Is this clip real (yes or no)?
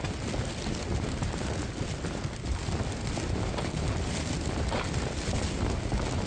yes